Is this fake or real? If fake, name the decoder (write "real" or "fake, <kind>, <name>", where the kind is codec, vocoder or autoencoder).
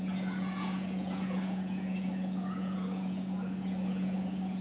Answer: fake, vocoder, Vocos